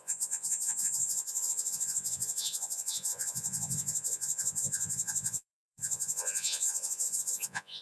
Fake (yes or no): yes